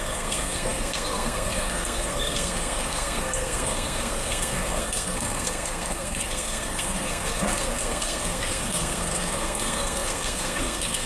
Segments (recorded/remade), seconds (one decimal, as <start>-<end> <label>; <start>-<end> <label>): 0.0-11.1 remade